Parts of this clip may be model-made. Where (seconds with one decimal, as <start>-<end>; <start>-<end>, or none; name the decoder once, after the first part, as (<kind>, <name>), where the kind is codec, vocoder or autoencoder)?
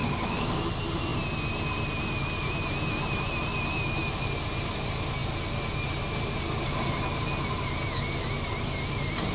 0.0-0.6 (codec, DAC)